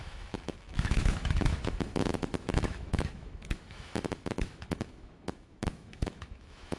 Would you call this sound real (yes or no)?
no